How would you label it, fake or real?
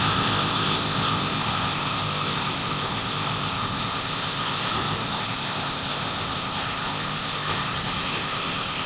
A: fake